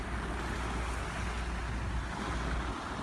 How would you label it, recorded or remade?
recorded